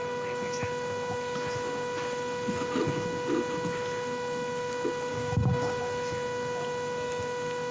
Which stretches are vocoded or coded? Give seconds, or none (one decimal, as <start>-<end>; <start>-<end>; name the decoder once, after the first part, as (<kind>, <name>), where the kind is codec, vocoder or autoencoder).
5.1-5.8 (codec, DAC)